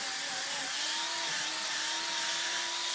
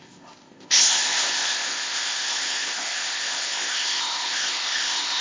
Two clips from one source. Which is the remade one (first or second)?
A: second